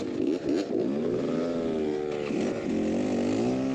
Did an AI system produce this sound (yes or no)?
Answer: no